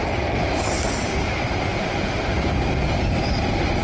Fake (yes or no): yes